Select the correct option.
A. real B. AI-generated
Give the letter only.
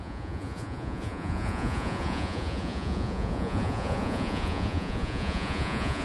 B